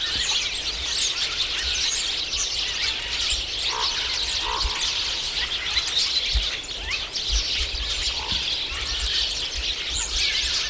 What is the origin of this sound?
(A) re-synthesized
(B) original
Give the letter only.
B